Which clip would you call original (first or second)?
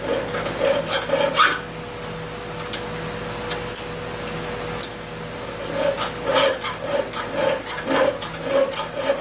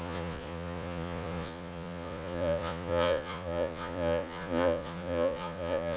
first